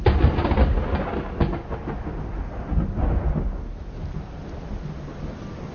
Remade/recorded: recorded